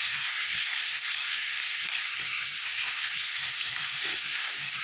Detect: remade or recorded remade